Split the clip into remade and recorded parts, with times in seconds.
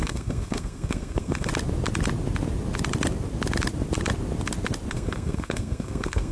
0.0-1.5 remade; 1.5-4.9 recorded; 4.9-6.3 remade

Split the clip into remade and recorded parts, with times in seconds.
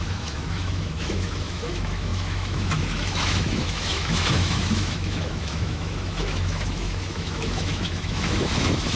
0.0-9.0 remade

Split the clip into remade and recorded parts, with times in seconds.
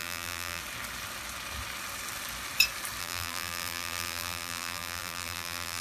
0.0-0.6 remade; 0.6-3.0 recorded; 3.0-5.8 remade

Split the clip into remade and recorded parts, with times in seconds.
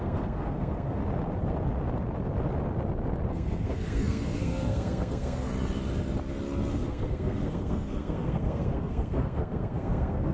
0.0-1.0 remade; 1.0-3.3 recorded; 3.3-5.5 remade; 5.5-6.7 recorded; 6.7-10.3 remade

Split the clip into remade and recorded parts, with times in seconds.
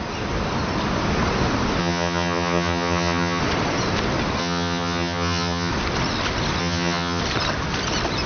0.0-1.8 recorded; 1.8-3.4 remade; 3.4-4.4 recorded; 4.4-5.7 remade; 5.7-6.6 recorded; 6.6-7.2 remade; 7.2-8.3 recorded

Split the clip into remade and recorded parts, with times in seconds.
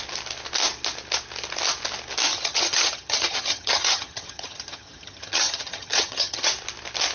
0.0-2.3 recorded; 2.3-6.5 remade; 6.5-7.1 recorded